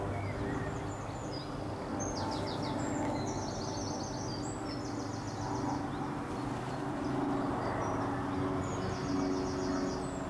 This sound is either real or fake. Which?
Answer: real